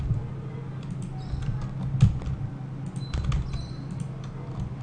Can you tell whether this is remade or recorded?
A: recorded